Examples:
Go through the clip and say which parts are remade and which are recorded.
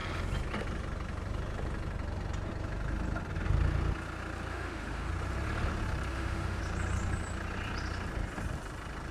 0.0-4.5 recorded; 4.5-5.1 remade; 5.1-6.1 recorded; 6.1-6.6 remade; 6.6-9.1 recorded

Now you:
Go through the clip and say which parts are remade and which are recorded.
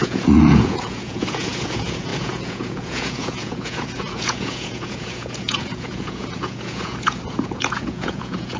0.0-8.6 remade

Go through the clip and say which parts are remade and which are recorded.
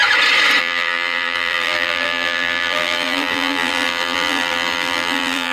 0.0-0.6 recorded; 0.6-5.5 remade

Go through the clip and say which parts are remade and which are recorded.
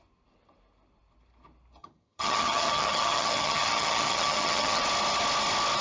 0.0-1.8 recorded; 1.8-4.8 remade; 4.8-5.8 recorded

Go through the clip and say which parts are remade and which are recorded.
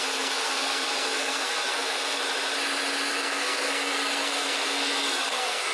0.0-2.2 remade; 2.2-3.1 recorded; 3.1-5.7 remade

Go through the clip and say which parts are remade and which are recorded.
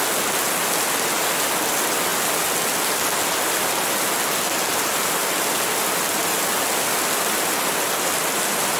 0.0-8.8 recorded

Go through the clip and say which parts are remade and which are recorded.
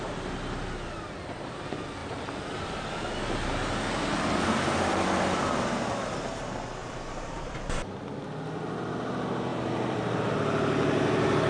0.0-6.8 recorded; 6.8-7.6 remade; 7.6-9.5 recorded; 9.5-10.2 remade; 10.2-11.5 recorded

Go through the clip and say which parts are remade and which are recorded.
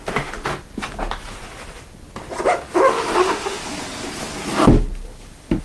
0.0-0.5 remade; 0.5-2.9 recorded; 2.9-3.6 remade; 3.6-5.6 recorded